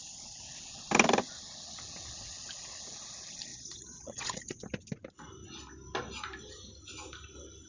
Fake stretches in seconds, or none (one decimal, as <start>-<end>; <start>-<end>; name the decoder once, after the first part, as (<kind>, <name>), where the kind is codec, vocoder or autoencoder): 3.5-4.4 (vocoder, Vocos)